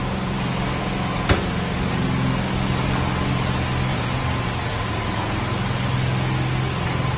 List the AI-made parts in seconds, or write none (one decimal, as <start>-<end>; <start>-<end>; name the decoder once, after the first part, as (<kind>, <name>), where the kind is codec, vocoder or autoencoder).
0.0-0.5 (vocoder, BigVGAN v2); 3.9-4.5